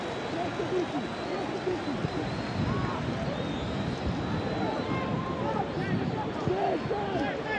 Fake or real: real